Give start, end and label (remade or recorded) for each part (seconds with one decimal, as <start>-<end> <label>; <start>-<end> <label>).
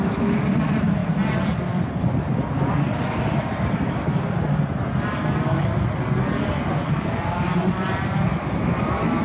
0.0-7.4 recorded; 7.4-9.2 remade